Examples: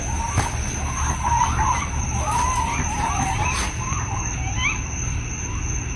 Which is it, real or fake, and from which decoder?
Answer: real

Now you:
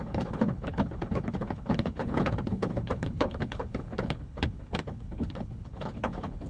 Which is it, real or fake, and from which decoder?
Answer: fake, codec, HILCodec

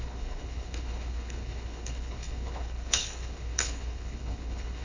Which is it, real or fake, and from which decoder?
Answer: fake, codec, HILCodec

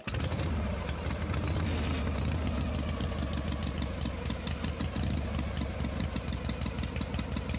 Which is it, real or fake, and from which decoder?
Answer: real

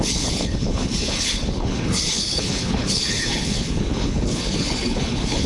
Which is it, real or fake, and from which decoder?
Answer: fake, codec, HILCodec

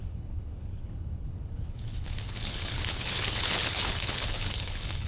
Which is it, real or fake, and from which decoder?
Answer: fake, codec, HILCodec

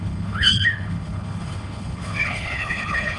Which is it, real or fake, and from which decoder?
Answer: fake, codec, HILCodec